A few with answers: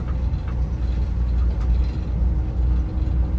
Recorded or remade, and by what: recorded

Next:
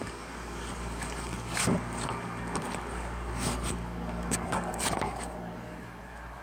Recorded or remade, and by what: remade, codec, DAC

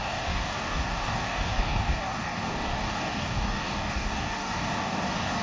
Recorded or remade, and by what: remade, codec, DAC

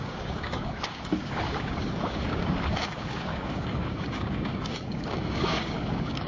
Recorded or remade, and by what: remade, codec, DAC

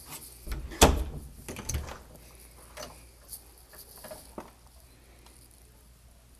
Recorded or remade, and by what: recorded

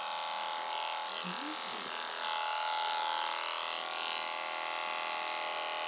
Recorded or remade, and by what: recorded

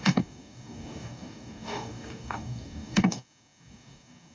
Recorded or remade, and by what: remade, codec, DAC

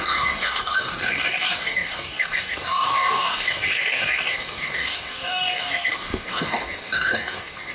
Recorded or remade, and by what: remade, codec, DAC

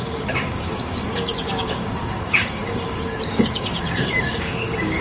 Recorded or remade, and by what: remade, codec, DAC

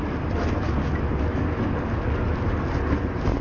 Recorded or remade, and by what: recorded